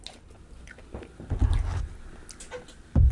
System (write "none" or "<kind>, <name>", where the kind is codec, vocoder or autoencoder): none